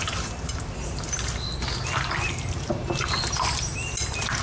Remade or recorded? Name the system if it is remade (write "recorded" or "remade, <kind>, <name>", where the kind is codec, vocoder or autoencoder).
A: recorded